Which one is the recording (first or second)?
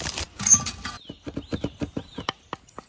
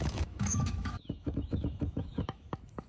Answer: first